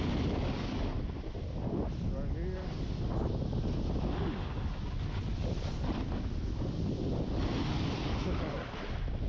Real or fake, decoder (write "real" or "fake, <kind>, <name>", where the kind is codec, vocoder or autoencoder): real